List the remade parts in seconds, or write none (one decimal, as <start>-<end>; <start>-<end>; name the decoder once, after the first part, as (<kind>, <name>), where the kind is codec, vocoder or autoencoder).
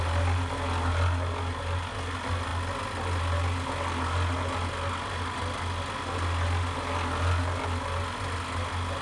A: none